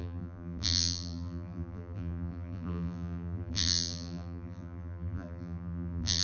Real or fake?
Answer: fake